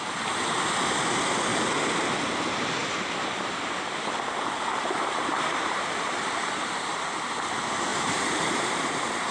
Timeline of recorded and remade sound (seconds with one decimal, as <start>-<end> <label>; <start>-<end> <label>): 0.0-2.8 recorded; 2.8-6.9 remade; 6.9-7.9 recorded; 7.9-9.3 remade